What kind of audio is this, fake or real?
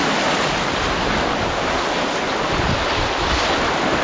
real